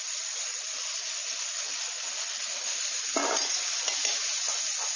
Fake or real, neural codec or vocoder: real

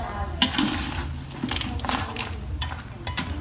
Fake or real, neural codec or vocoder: real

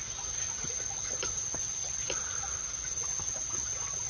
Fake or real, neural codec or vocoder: real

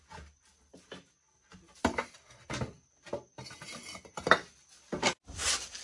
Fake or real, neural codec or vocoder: real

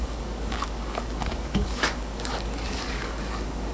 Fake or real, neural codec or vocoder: fake, codec, DAC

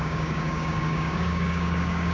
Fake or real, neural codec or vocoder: fake, codec, DAC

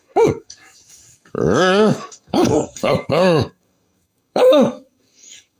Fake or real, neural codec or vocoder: fake, codec, DAC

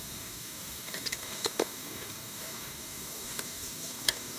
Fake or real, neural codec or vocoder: fake, codec, DAC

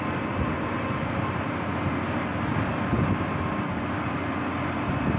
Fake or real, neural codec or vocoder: real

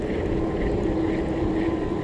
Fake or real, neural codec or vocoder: real